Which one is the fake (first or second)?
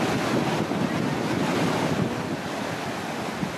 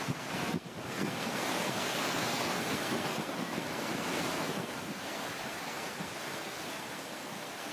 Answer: second